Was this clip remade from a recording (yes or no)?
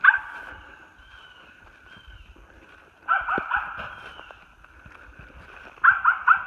yes